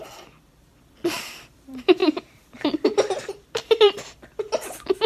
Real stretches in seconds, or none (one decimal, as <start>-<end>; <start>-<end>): none